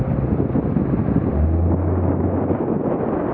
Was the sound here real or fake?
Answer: real